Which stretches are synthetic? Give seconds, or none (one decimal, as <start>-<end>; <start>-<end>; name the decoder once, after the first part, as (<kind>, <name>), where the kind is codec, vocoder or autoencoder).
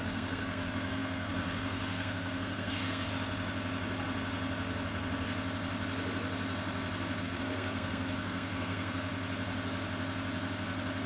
0.0-3.1 (codec, SNAC); 7.2-9.1